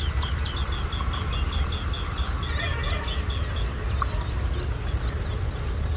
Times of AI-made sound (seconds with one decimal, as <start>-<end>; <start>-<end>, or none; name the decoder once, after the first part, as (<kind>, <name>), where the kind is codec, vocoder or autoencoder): none

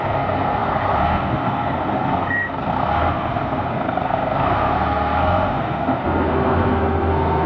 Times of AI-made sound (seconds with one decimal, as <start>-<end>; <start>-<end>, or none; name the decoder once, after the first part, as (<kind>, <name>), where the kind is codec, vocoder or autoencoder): 0.0-7.5 (codec, SNAC)

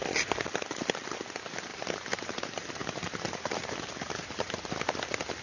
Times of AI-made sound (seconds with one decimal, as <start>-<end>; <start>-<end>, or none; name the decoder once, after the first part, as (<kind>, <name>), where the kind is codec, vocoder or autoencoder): 1.7-4.7 (vocoder, BigVGAN v2)

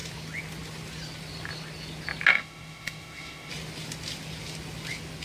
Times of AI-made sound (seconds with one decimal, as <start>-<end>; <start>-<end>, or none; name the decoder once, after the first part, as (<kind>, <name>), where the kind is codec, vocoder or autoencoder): 2.3-3.5 (autoencoder, DAC-VAE)

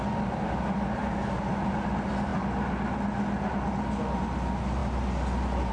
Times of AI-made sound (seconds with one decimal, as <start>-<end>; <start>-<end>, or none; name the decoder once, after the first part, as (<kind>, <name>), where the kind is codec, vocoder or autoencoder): none

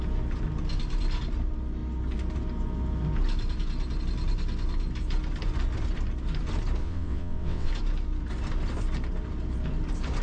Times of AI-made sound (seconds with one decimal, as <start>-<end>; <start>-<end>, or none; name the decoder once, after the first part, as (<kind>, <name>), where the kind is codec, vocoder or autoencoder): 6.8-7.7 (vocoder, WaveNeXt)

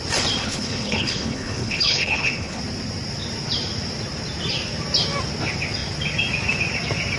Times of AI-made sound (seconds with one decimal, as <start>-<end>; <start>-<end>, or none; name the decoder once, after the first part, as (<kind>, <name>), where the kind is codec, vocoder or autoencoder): 0.4-2.6 (codec, HILCodec)

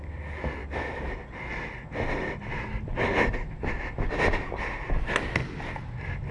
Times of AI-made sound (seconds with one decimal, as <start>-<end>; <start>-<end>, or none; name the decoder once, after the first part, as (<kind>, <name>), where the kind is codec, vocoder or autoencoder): none